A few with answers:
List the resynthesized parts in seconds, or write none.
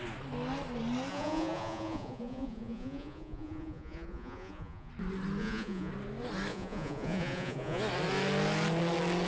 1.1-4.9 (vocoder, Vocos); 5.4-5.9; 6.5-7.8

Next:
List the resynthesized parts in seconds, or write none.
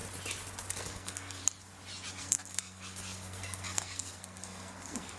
0.7-1.4 (codec, SNAC); 2.1-5.2